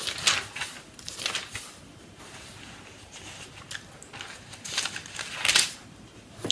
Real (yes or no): yes